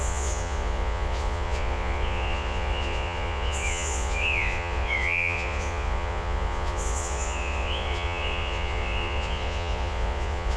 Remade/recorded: remade